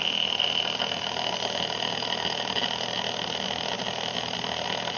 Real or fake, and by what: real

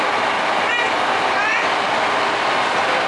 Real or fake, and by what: real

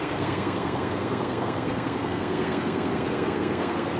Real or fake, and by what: fake, codec, SNAC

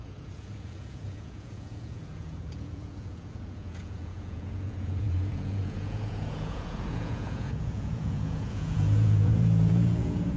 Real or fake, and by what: fake, vocoder, Vocos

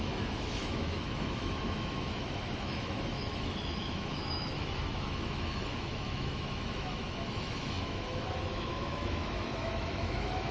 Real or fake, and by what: fake, autoencoder, DAC-VAE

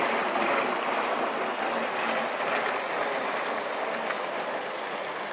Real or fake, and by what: real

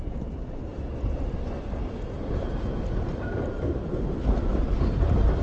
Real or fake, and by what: real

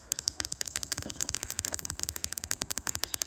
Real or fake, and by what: fake, codec, SNAC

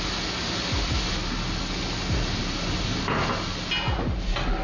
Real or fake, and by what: real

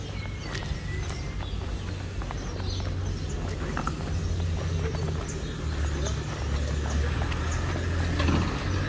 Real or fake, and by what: real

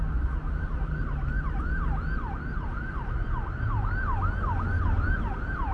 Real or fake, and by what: real